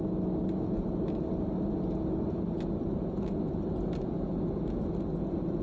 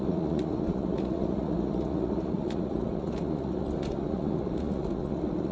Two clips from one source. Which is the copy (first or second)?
second